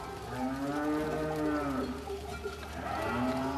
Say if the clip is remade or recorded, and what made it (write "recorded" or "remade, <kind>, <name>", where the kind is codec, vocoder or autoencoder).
recorded